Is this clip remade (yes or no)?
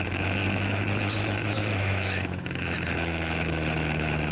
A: yes